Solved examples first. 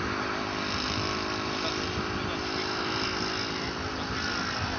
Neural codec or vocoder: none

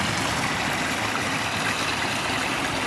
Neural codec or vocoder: none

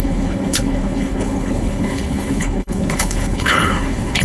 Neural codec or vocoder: codec, HILCodec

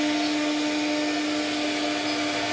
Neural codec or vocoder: none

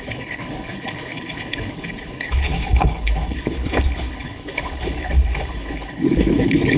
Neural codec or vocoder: codec, HILCodec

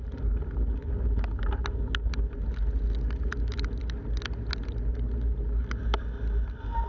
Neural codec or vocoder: none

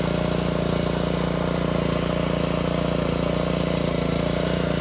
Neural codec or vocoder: none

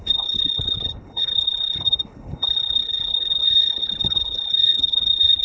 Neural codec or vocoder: codec, HILCodec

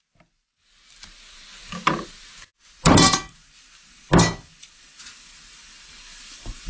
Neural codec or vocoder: none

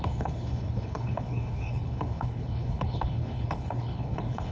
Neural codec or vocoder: codec, HILCodec